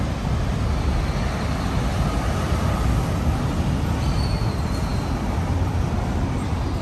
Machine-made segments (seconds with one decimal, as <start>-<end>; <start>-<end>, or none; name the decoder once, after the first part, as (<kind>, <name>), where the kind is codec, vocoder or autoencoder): none